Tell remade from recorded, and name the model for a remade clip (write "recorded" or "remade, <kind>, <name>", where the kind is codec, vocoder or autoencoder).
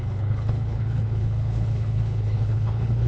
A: remade, codec, HILCodec